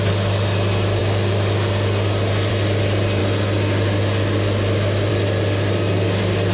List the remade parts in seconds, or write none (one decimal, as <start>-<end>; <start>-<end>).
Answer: none

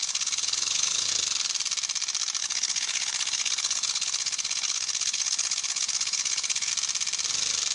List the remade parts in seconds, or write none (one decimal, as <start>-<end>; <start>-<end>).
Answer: 0.0-1.1; 2.4-6.7

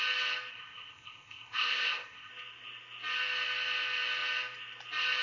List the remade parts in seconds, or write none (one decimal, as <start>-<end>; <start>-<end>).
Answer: 0.5-2.3

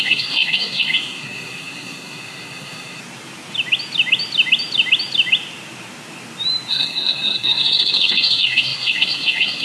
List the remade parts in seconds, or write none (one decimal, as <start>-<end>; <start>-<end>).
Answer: 0.0-3.0; 6.7-9.6